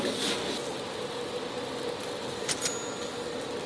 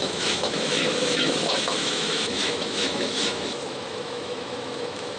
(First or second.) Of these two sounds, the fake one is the second